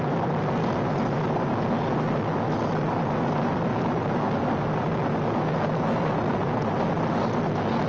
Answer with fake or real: real